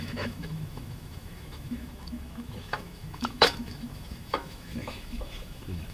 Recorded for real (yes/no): no